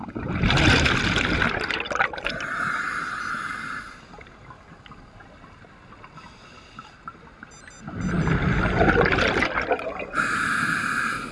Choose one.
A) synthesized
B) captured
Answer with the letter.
B